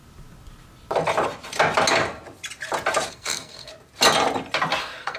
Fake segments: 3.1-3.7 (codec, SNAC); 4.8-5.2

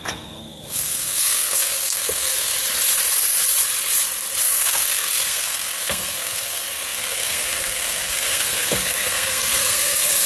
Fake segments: 0.0-2.5 (codec, SNAC); 4.4-10.3

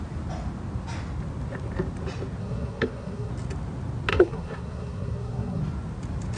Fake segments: 2.4-3.3 (codec, SNAC); 4.1-5.6